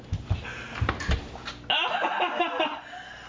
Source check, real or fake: real